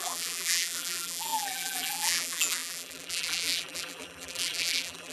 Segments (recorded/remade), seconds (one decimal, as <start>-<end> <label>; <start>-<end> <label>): 0.0-5.1 remade